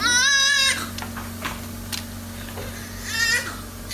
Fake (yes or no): no